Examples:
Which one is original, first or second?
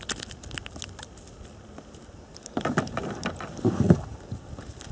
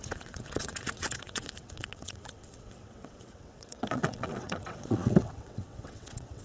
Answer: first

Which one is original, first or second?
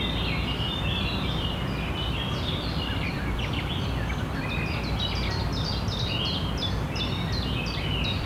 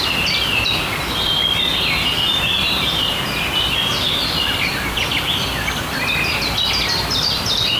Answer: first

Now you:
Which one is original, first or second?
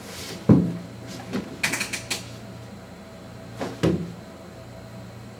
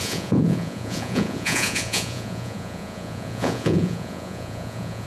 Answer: first